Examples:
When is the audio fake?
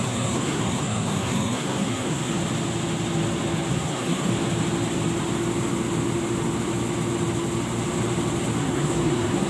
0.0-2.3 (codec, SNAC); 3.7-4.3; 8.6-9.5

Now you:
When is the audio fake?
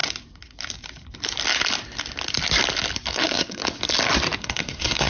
3.1-3.6 (codec, SNAC); 4.4-5.1